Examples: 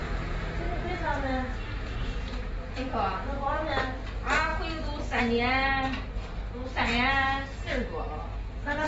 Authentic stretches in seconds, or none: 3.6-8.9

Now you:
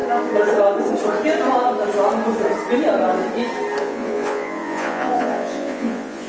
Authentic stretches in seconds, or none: 0.0-3.8

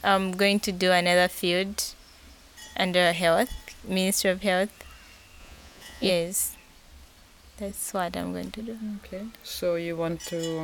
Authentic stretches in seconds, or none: 0.0-5.4; 6.1-10.6

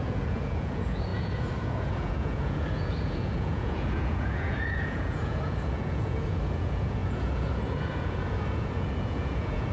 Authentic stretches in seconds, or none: none

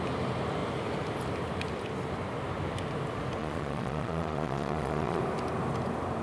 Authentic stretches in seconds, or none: 0.0-3.4; 5.2-6.2

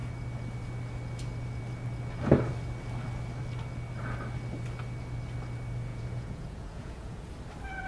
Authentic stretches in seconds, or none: 0.0-5.9; 7.3-7.9

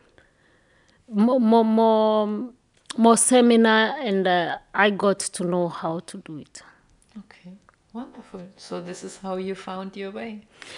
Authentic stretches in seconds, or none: 0.0-8.0; 9.2-10.8